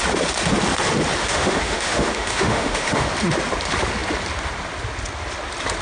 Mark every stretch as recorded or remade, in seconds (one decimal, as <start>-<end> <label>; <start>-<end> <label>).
0.0-1.2 recorded; 1.2-3.1 remade; 3.1-5.8 recorded

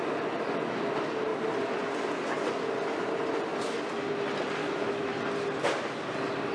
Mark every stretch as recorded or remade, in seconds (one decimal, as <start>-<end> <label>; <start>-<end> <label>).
0.0-4.6 recorded; 4.6-5.1 remade; 5.1-6.5 recorded

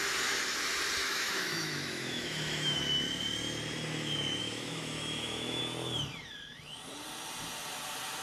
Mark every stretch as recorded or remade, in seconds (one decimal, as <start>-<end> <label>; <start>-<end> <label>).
0.0-1.0 recorded; 1.0-2.8 remade; 2.8-4.4 recorded; 4.4-5.6 remade; 5.6-8.2 recorded

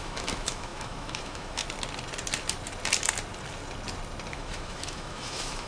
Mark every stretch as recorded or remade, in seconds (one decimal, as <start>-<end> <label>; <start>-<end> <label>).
0.0-1.6 remade; 1.6-4.3 recorded; 4.3-5.7 remade

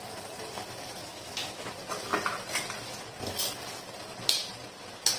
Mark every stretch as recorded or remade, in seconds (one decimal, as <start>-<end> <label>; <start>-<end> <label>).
0.0-1.0 recorded; 1.0-1.7 remade; 1.7-5.2 recorded

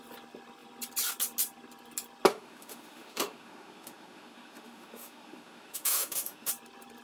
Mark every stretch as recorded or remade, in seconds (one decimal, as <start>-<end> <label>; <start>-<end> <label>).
0.0-2.3 recorded; 2.3-6.5 remade; 6.5-7.0 recorded